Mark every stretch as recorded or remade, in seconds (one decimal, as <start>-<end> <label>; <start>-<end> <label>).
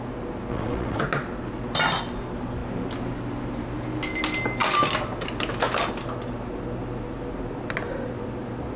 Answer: 0.0-0.5 recorded; 0.5-1.0 remade; 1.0-8.8 recorded